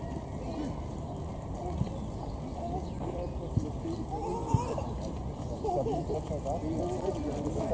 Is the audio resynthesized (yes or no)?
no